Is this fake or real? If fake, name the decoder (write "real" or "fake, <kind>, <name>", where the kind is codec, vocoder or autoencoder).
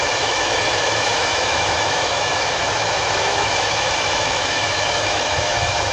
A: fake, autoencoder, DAC-VAE